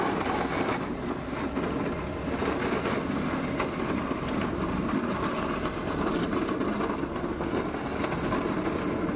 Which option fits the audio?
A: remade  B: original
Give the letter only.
B